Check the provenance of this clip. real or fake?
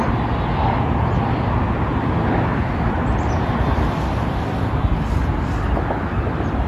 real